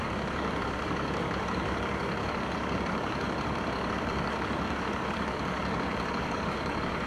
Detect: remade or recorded remade